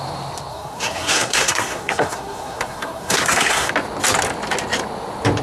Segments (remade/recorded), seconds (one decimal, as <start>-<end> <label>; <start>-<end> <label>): 0.0-0.5 recorded; 0.5-3.7 remade; 3.7-5.4 recorded